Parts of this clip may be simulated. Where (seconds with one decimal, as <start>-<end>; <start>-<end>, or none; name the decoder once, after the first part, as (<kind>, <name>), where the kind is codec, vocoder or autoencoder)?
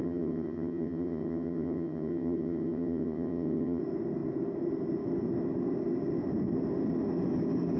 0.0-3.8 (vocoder, HiFi-GAN)